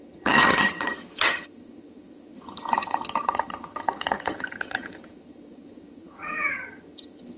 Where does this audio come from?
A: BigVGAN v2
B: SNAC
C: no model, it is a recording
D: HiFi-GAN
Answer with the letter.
D